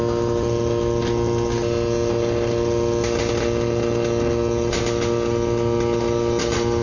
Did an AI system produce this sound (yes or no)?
no